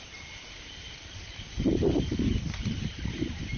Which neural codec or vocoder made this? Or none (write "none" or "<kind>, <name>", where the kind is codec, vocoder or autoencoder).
vocoder, BigVGAN v2